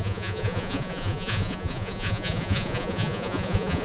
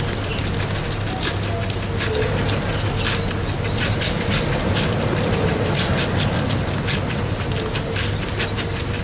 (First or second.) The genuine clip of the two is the second